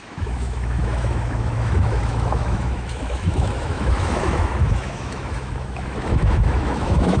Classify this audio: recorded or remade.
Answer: remade